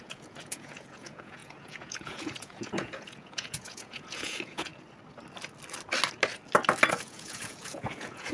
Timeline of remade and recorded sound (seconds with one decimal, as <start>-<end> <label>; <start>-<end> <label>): 0.0-4.7 remade; 4.7-6.9 recorded; 6.9-8.3 remade